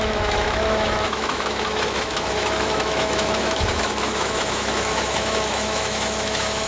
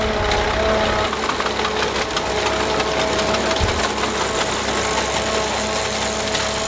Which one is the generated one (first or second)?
first